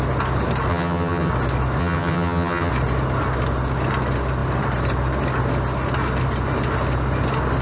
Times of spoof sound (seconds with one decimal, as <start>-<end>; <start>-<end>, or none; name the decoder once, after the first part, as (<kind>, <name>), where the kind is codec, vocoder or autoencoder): 0.7-1.3 (vocoder, HiFi-GAN); 1.8-2.7